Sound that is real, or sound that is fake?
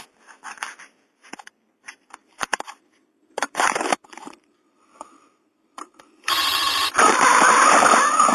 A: fake